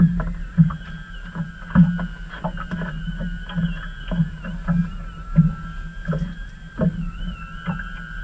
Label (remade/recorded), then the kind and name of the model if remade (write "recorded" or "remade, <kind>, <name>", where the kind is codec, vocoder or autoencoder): recorded